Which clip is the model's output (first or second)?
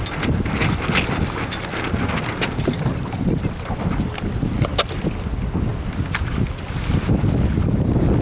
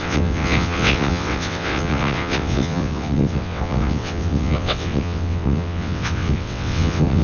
second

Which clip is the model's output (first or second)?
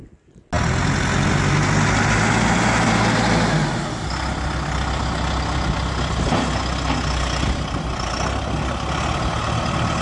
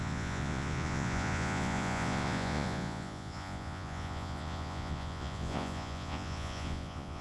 second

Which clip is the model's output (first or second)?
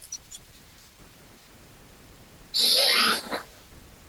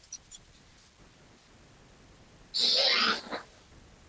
first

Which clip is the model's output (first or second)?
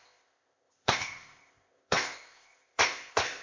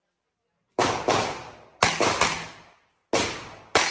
first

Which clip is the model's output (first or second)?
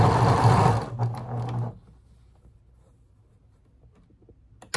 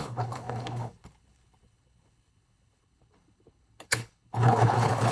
second